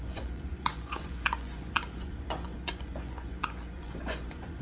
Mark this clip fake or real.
fake